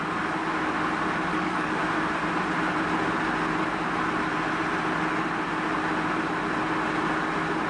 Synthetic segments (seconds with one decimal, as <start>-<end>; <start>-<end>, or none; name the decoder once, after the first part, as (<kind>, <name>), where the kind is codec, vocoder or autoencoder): 1.3-1.8 (codec, DAC)